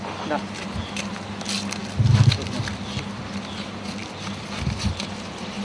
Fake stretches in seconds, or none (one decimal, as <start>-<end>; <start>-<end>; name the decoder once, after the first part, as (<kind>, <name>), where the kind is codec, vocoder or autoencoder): none